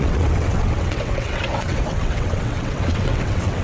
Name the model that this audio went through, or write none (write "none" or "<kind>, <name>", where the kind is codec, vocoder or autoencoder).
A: vocoder, WaveNeXt